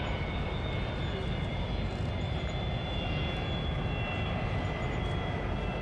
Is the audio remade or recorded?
recorded